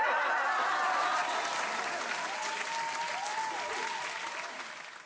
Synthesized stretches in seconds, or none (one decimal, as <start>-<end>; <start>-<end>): 1.2-2.5